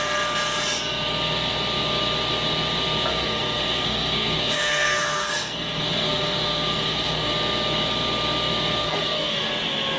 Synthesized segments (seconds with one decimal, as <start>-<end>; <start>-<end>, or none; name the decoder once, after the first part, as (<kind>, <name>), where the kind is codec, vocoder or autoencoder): 3.1-7.3 (codec, SNAC); 8.8-9.5